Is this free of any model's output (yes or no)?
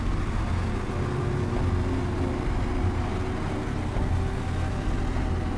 yes